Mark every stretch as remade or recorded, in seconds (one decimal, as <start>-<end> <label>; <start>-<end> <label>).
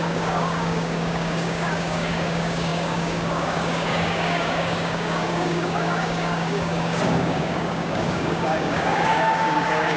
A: 0.0-10.0 remade